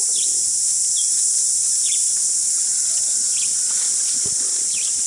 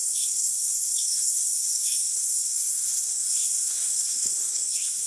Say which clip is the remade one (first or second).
second